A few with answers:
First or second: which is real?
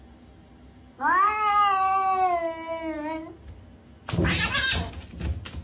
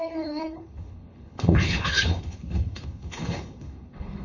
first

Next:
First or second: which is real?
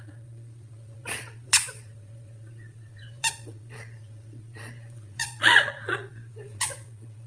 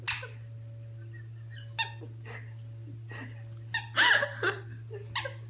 second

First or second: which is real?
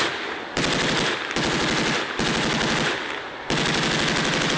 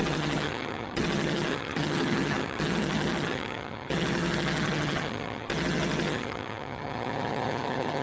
first